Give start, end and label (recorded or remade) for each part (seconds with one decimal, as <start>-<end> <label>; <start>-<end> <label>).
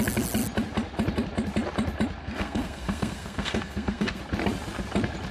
0.0-2.2 recorded; 2.2-4.2 remade; 4.2-5.3 recorded